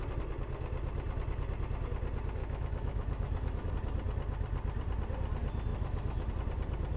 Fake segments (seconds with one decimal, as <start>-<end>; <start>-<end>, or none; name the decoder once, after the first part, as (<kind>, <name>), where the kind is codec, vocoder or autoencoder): 2.4-3.7 (autoencoder, DAC-VAE); 5.7-6.3

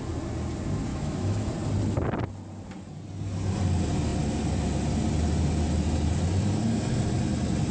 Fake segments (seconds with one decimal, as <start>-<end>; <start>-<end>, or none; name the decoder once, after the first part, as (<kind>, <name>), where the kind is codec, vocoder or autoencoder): 0.9-1.5 (autoencoder, DAC-VAE)

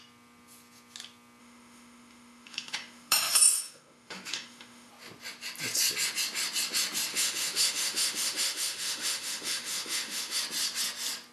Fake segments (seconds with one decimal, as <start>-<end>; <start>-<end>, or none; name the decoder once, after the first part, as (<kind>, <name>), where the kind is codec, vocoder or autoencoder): 1.4-4.9 (autoencoder, DAC-VAE); 7.1-10.4

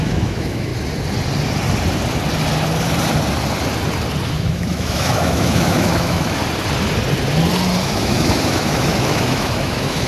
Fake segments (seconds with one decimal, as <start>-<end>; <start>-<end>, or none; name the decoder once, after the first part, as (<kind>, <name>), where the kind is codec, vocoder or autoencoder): 0.0-0.7 (autoencoder, DAC-VAE); 4.3-6.4; 7.8-10.1

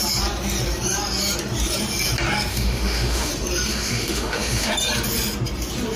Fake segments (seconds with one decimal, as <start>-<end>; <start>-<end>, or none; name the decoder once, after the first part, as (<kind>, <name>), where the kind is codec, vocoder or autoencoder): 2.5-3.3 (autoencoder, DAC-VAE); 3.7-4.7

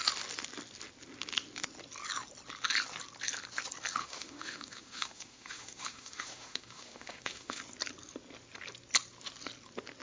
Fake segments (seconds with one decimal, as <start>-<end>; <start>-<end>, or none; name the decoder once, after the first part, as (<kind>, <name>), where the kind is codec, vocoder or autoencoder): 4.0-7.6 (autoencoder, DAC-VAE)

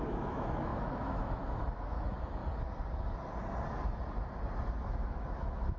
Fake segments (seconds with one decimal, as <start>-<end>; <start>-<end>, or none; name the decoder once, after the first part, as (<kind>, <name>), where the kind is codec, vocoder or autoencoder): 0.0-2.4 (autoencoder, DAC-VAE); 4.8-5.8